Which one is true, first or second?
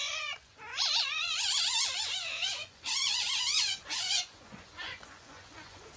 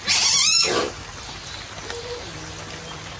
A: second